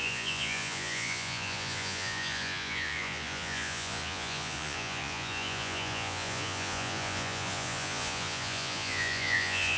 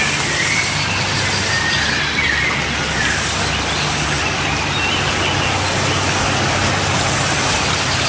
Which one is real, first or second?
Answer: second